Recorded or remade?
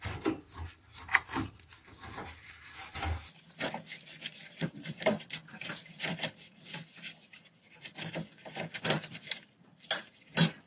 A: recorded